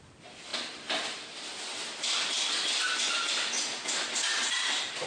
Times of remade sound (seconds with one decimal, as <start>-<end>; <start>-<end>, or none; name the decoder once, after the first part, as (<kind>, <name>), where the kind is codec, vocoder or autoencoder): none